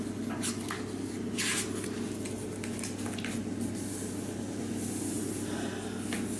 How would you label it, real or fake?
real